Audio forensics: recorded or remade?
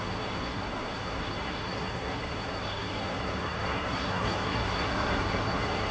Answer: remade